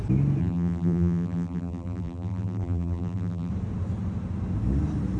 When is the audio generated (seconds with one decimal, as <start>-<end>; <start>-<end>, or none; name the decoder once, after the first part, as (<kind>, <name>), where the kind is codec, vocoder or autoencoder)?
0.4-3.5 (vocoder, BigVGAN v2)